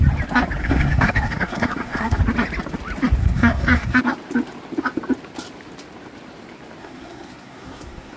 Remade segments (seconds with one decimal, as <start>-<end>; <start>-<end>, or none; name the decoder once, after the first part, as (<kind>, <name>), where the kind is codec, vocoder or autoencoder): 0.6-2.2 (codec, SNAC); 3.2-4.0; 6.8-8.2